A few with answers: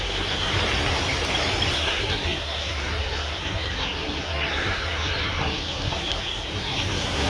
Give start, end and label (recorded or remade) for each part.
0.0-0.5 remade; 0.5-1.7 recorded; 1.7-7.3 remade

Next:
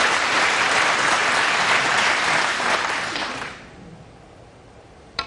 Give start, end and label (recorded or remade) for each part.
0.0-5.3 remade

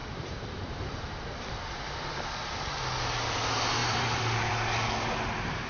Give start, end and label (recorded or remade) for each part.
0.0-2.7 remade; 2.7-3.8 recorded; 3.8-4.5 remade; 4.5-5.7 recorded

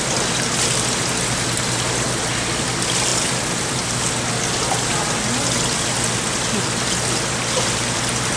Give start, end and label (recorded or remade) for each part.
0.0-8.4 recorded

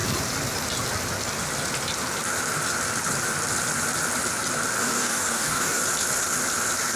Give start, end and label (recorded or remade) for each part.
0.0-4.8 recorded; 4.8-5.8 remade; 5.8-7.0 recorded

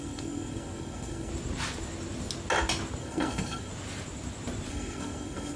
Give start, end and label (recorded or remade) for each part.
0.0-1.3 remade; 1.3-3.0 recorded; 3.0-3.7 remade; 3.7-4.7 recorded; 4.7-5.6 remade

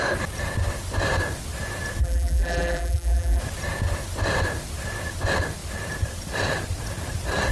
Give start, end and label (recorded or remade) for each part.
0.0-2.0 recorded; 2.0-3.4 remade; 3.4-7.5 recorded